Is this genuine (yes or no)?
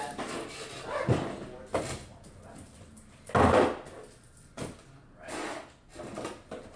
yes